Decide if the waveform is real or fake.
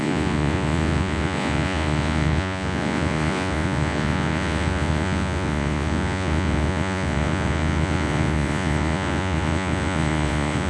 fake